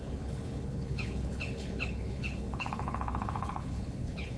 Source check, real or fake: fake